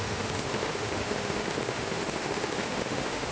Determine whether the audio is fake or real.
fake